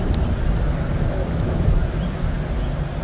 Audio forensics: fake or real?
real